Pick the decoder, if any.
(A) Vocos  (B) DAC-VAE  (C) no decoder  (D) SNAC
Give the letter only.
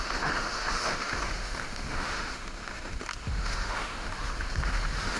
B